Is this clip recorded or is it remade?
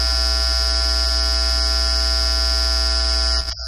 recorded